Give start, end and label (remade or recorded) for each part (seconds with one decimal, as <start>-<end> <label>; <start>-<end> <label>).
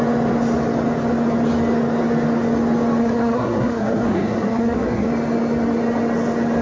0.0-3.0 recorded; 3.0-5.1 remade; 5.1-6.6 recorded